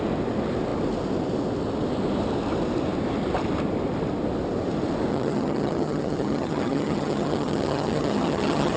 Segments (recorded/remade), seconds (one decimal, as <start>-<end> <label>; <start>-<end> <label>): 0.0-5.1 recorded; 5.1-8.8 remade